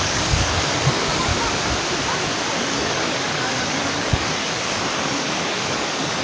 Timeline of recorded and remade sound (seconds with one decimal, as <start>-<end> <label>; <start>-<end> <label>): 0.0-1.3 remade; 1.3-2.6 recorded; 2.6-6.2 remade